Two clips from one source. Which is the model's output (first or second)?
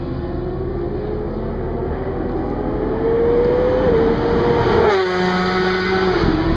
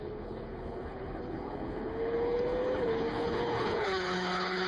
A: second